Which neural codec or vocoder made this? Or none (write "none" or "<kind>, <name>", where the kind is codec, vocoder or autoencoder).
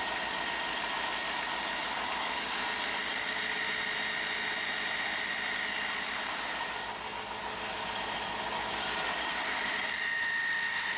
none